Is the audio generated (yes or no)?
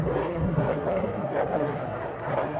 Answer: yes